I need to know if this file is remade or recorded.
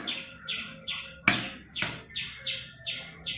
recorded